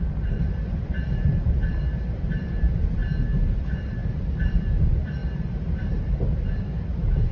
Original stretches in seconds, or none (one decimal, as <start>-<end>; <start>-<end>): 3.0-3.6; 4.0-4.5; 5.2-6.8